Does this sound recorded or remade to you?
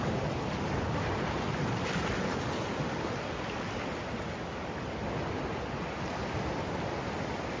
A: recorded